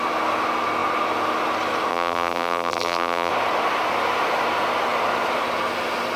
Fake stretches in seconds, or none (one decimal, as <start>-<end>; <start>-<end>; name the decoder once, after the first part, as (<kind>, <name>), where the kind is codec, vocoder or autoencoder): 1.9-3.3 (vocoder, BigVGAN v2)

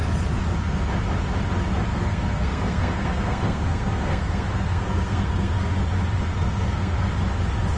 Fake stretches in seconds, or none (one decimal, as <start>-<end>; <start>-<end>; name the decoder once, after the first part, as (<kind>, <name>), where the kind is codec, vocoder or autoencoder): 1.9-5.7 (codec, SNAC); 6.3-7.1

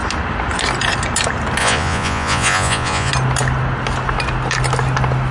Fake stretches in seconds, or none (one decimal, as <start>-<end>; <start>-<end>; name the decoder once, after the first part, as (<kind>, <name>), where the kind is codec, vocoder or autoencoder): 1.6-3.1 (vocoder, Vocos)

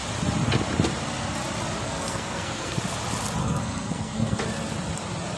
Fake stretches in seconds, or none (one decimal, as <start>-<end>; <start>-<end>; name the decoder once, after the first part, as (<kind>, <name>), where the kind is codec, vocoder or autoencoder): 1.8-2.8 (codec, SNAC); 3.4-4.4

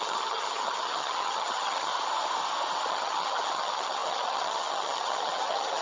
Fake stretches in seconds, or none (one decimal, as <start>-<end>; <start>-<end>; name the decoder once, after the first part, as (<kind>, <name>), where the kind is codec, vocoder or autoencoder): 0.0-1.9 (vocoder, HiFi-GAN); 2.9-5.8

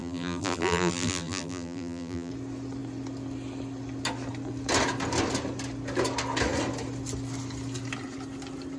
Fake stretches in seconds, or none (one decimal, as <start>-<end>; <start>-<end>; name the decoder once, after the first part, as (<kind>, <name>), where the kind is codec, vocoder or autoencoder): 0.0-2.3 (vocoder, BigVGAN v2)

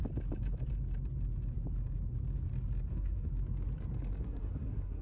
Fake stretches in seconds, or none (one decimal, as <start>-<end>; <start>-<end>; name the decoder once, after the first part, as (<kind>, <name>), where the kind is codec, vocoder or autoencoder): 2.9-3.3 (codec, SNAC); 4.2-5.0